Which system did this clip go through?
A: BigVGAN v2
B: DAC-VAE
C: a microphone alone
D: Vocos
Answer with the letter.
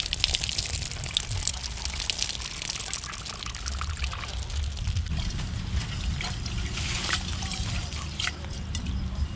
C